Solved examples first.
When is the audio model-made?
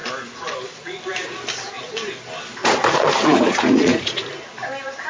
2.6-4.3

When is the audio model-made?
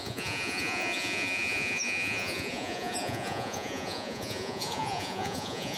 0.0-5.8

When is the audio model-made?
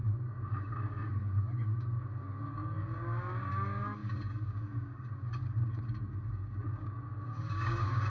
0.0-8.1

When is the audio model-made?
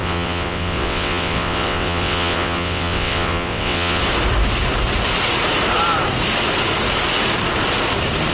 0.0-4.0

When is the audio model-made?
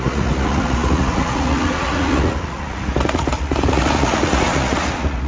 0.0-5.3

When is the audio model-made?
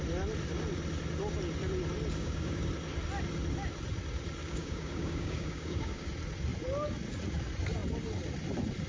2.2-2.7; 4.4-6.1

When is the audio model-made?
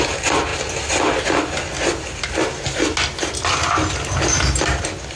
none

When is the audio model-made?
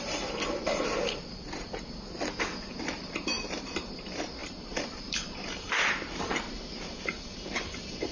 0.0-8.1